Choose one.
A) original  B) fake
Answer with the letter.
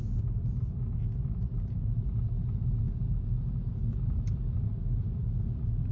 A